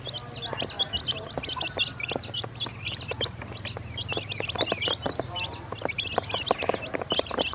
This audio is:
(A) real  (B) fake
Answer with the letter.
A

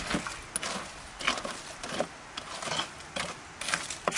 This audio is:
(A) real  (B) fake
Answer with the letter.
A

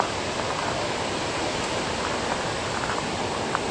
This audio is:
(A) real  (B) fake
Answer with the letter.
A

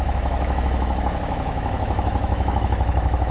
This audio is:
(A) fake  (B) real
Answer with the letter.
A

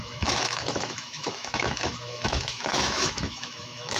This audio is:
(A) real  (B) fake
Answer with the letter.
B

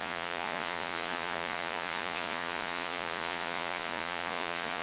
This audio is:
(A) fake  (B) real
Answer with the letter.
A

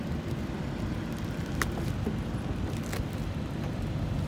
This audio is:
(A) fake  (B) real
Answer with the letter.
B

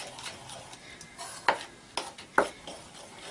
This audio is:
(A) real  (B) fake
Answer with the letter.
A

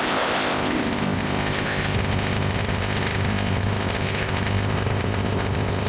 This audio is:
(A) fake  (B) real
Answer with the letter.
A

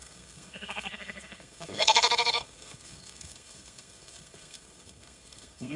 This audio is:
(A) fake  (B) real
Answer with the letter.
A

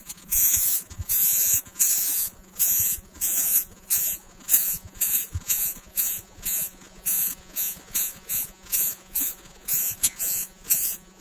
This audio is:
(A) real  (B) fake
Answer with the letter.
B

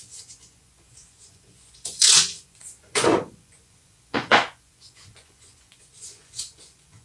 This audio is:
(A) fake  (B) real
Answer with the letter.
A